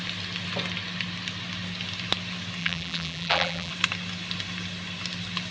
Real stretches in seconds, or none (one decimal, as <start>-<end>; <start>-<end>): 0.0-2.6; 3.7-5.5